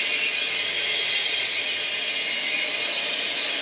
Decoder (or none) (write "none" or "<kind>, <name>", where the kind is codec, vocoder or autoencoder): none